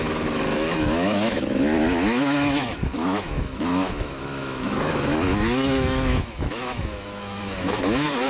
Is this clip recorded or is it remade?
remade